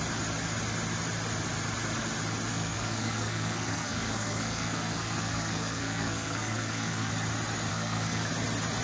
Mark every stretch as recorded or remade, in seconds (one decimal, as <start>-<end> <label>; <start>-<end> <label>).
0.0-2.5 recorded; 2.5-7.1 remade; 7.1-7.7 recorded; 7.7-8.3 remade; 8.3-8.8 recorded